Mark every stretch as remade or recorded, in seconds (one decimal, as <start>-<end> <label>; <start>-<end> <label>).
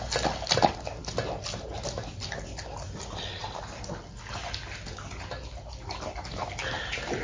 0.0-7.2 recorded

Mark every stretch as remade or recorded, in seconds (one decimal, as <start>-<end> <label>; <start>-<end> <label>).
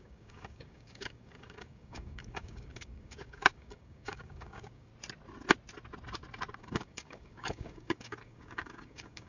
0.0-4.9 remade; 4.9-6.6 recorded; 6.6-9.3 remade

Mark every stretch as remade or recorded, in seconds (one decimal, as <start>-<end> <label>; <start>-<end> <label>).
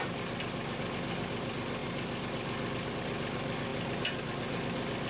0.0-5.1 recorded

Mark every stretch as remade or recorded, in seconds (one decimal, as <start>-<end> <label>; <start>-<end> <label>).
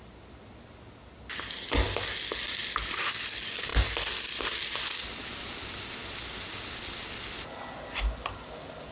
0.0-8.9 recorded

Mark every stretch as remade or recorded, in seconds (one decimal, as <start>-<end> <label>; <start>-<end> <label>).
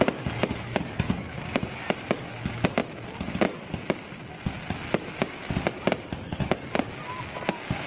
0.0-7.9 recorded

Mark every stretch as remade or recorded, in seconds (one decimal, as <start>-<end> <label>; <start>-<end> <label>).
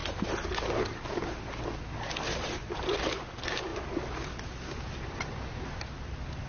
0.0-6.5 recorded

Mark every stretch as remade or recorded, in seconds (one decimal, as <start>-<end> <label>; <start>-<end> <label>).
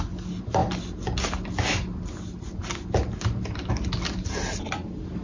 0.0-5.2 recorded